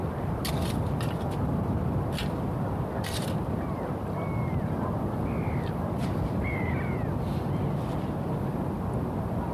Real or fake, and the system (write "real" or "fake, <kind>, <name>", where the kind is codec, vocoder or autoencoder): real